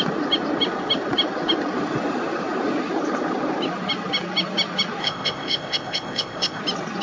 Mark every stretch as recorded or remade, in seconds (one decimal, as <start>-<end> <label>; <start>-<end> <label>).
0.0-5.0 recorded; 5.0-6.6 remade; 6.6-7.0 recorded